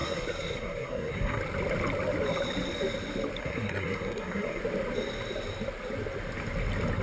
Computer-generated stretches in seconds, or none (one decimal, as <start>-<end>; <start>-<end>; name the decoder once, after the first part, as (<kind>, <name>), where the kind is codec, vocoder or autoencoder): 0.0-1.4 (codec, SNAC); 3.4-4.6